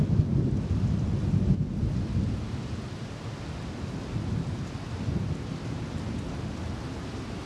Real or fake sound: real